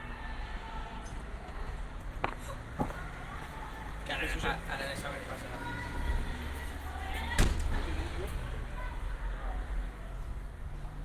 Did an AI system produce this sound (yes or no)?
no